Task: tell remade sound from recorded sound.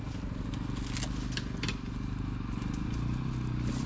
recorded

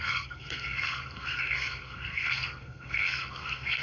remade